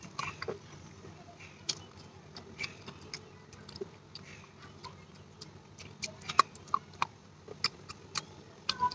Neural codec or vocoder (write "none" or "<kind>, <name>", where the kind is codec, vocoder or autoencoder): none